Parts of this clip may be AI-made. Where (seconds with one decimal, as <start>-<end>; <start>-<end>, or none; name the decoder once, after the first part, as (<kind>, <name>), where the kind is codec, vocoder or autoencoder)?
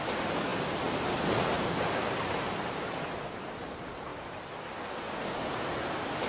0.0-4.1 (vocoder, BigVGAN v2); 5.8-6.3